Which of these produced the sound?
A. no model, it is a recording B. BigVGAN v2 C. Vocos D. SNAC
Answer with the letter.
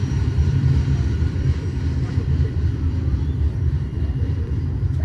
B